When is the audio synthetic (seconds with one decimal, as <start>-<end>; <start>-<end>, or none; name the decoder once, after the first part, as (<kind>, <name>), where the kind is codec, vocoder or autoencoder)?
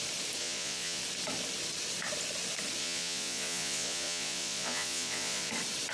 0.4-1.0 (vocoder, Vocos); 2.8-5.5